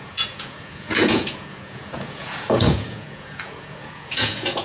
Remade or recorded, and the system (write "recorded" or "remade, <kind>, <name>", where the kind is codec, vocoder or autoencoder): remade, vocoder, Vocos